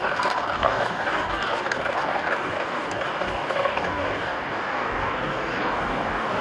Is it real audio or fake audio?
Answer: fake